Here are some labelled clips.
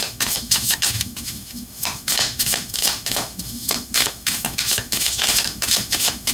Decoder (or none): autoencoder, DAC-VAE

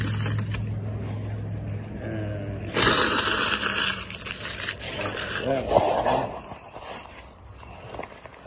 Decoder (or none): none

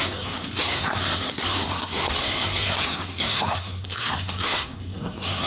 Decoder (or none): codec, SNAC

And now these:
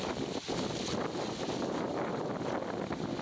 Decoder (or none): none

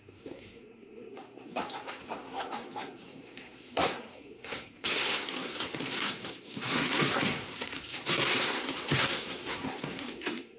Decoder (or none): codec, SNAC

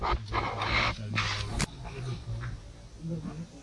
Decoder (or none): none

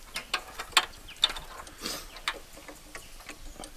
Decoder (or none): none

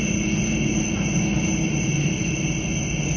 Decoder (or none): none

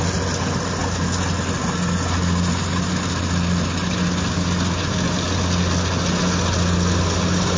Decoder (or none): none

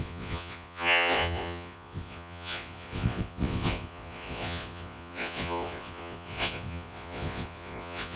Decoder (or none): vocoder, Vocos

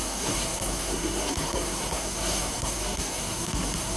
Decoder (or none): codec, SNAC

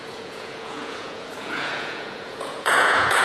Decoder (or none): vocoder, Vocos